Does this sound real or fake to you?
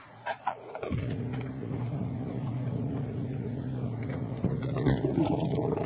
fake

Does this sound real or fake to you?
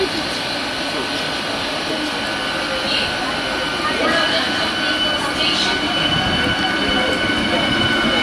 real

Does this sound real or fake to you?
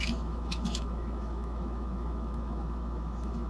fake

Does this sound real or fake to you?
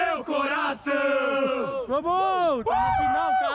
real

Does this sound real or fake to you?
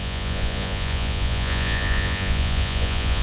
fake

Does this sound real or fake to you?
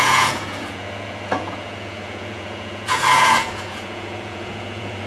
fake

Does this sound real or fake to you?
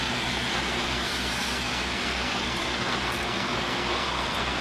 fake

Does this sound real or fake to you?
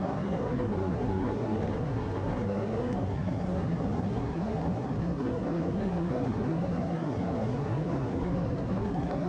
fake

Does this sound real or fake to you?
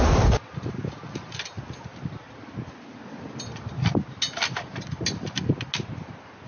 real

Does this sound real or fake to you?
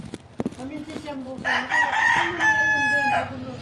real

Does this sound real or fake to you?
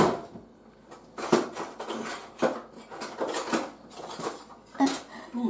real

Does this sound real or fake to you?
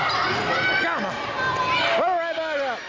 real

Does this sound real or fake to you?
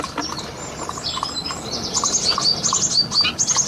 real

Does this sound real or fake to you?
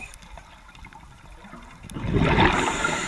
real